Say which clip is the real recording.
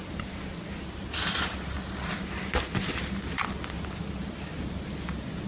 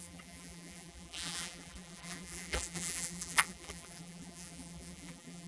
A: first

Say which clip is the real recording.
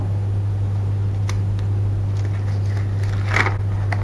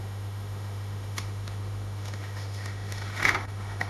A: first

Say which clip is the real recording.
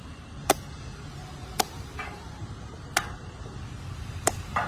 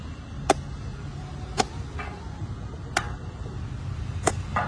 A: second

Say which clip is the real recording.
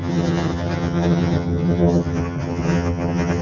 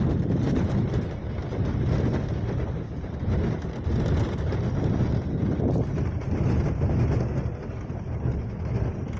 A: second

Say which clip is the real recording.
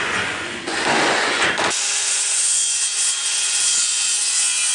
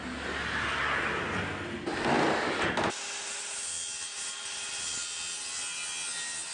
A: second